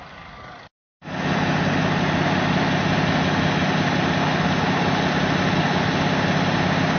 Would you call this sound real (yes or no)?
yes